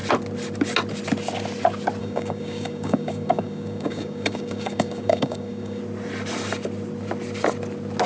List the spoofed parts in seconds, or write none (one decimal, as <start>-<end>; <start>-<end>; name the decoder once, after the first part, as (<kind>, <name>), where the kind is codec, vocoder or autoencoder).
2.0-5.8 (codec, DAC)